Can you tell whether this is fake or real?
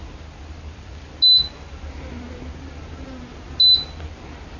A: real